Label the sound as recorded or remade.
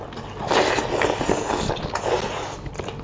recorded